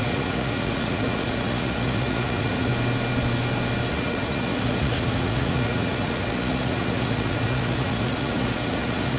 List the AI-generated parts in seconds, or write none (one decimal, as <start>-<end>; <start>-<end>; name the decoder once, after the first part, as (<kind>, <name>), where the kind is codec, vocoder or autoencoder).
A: 0.0-2.7 (vocoder, Vocos); 3.9-9.2